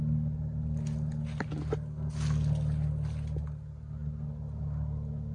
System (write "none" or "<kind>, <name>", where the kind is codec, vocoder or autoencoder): none